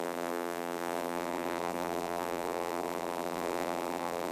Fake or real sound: fake